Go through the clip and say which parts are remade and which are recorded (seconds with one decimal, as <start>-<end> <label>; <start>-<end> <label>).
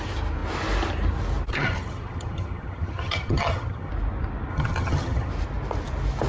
0.0-1.5 recorded; 1.5-3.9 remade; 3.9-4.5 recorded; 4.5-5.3 remade; 5.3-6.3 recorded